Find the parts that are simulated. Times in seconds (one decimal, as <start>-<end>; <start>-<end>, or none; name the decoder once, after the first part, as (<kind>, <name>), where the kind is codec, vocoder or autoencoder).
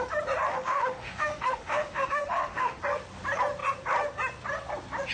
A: 0.5-2.8 (autoencoder, DAC-VAE)